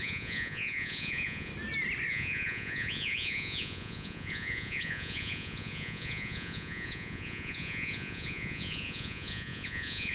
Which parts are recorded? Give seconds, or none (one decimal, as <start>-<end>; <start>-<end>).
1.5-2.1